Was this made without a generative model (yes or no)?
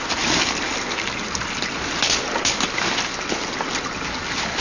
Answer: yes